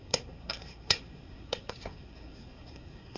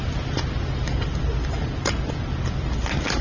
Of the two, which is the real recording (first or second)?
second